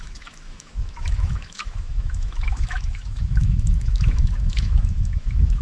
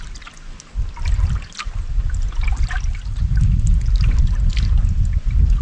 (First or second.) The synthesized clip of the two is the first